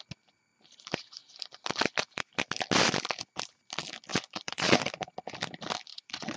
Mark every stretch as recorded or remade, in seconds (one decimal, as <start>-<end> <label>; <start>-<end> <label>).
0.0-4.1 recorded; 4.1-4.8 remade; 4.8-5.9 recorded; 5.9-6.4 remade